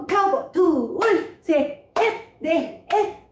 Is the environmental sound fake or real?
fake